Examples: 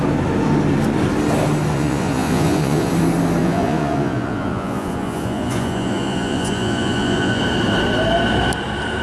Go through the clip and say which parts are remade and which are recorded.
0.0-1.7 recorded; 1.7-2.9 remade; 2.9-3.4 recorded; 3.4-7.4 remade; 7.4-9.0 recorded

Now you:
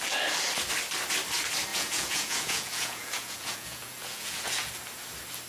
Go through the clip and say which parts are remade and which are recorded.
0.0-1.7 recorded; 1.7-4.7 remade; 4.7-5.5 recorded